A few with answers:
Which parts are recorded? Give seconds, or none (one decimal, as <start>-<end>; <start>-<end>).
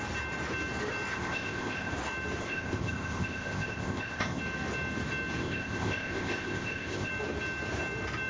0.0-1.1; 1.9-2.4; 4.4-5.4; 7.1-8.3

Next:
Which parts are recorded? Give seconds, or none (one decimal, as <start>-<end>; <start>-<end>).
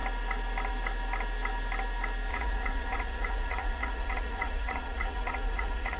0.0-2.3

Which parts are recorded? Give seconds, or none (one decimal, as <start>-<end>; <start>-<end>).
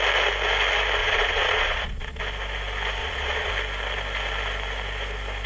0.0-1.0; 2.2-3.0; 3.5-5.5